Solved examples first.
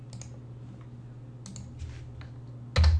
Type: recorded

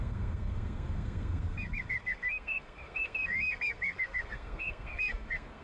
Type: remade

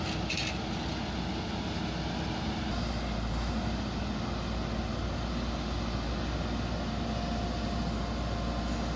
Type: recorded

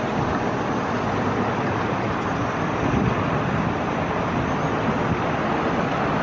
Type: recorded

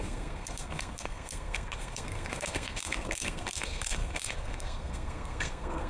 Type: remade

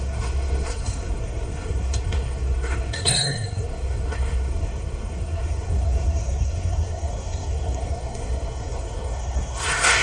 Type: remade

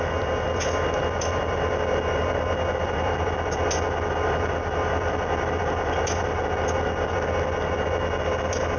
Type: recorded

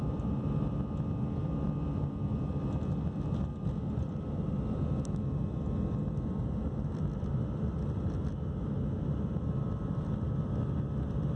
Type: recorded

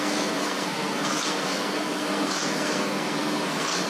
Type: remade